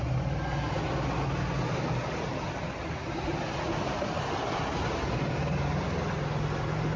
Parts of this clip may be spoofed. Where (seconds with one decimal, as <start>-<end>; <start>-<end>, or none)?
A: none

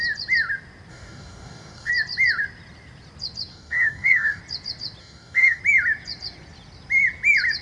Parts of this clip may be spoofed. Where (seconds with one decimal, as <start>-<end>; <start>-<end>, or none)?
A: 0.9-1.9; 3.5-4.4; 5.0-5.6

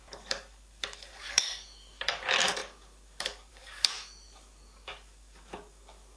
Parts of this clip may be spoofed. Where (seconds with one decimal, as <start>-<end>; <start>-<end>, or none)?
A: 0.0-6.2

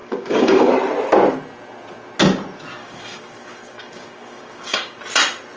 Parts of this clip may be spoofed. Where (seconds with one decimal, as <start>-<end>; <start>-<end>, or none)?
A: 0.0-0.7; 2.8-5.0